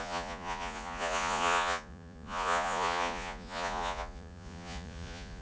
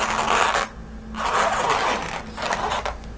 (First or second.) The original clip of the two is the second